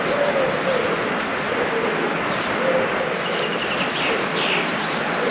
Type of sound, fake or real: real